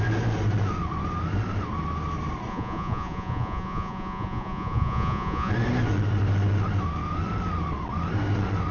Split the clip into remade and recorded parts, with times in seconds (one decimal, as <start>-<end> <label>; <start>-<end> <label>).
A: 0.0-2.5 recorded; 2.5-5.5 remade; 5.5-8.7 recorded